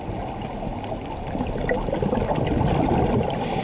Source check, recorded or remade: recorded